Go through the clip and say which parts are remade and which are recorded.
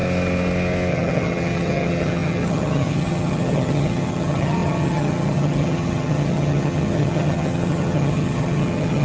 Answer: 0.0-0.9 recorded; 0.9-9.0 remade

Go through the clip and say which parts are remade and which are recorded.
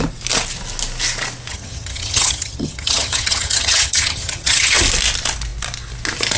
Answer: 0.0-1.5 recorded; 1.5-4.8 remade; 4.8-6.4 recorded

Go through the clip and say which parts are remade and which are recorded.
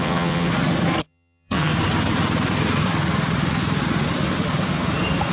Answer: 0.0-0.5 remade; 0.5-1.0 recorded; 1.0-1.7 remade; 1.7-5.3 recorded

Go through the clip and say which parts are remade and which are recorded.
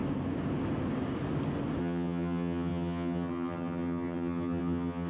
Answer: 0.0-1.8 recorded; 1.8-5.1 remade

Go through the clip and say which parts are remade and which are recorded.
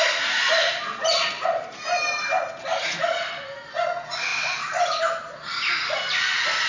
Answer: 0.0-6.7 recorded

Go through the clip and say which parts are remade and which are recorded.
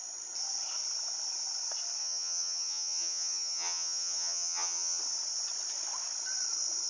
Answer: 0.0-2.0 recorded; 2.0-5.0 remade; 5.0-6.9 recorded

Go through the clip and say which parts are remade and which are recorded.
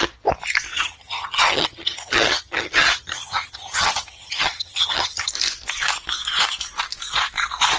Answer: 0.0-0.7 recorded; 0.7-5.3 remade; 5.3-7.8 recorded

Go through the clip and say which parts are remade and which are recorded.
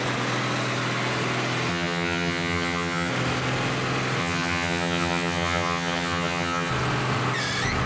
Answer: 0.0-1.7 recorded; 1.7-3.1 remade; 3.1-4.2 recorded; 4.2-6.7 remade; 6.7-7.9 recorded